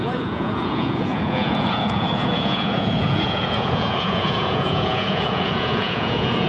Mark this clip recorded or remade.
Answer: remade